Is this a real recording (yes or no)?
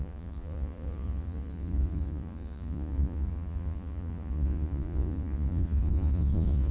no